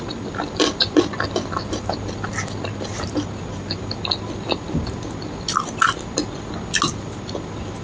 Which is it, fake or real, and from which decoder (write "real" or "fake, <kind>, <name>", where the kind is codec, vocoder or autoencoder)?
real